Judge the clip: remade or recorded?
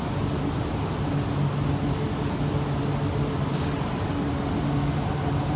recorded